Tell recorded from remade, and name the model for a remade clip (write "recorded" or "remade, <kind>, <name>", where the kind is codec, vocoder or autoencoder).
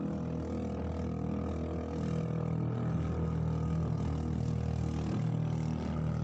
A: recorded